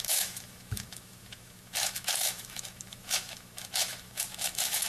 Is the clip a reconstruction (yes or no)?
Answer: yes